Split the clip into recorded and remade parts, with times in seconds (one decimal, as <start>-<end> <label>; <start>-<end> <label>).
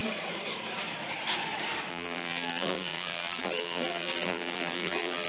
0.0-1.9 recorded; 1.9-5.3 remade